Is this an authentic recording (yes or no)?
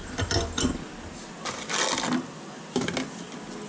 yes